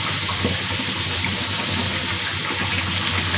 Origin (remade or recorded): recorded